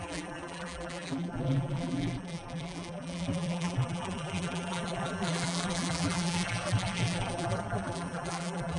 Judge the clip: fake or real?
fake